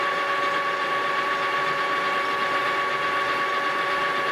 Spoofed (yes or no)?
no